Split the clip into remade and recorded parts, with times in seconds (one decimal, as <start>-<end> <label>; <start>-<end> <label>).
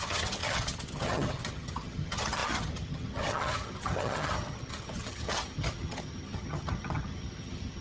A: 0.0-7.8 remade